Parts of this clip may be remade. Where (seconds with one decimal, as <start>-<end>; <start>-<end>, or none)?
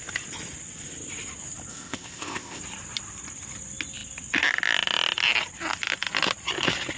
1.7-2.6